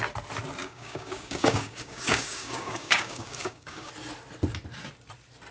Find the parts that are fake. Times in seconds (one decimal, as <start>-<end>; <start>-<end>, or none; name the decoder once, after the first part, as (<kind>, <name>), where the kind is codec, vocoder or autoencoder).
0.6-3.9 (codec, DAC)